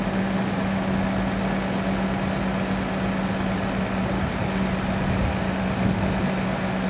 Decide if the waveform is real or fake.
real